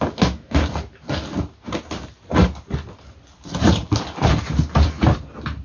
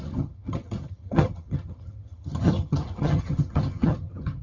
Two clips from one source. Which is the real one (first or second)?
first